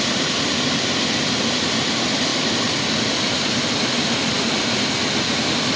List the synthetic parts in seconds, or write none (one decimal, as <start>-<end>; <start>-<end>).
2.3-3.4